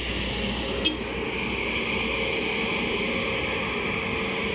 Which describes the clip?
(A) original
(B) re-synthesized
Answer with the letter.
A